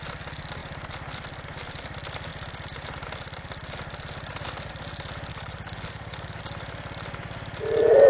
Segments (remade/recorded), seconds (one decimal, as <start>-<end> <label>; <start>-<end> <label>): 0.0-5.3 recorded; 5.3-6.4 remade; 6.4-8.1 recorded